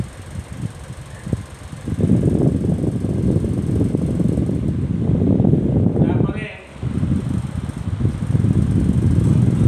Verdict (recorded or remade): recorded